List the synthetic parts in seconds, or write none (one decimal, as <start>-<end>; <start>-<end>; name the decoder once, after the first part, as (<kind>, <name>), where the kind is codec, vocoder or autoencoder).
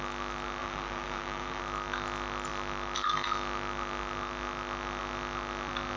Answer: 0.6-1.6 (vocoder, BigVGAN v2)